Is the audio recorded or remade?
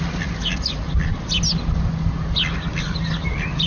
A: recorded